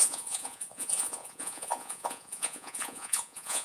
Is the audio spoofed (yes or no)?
yes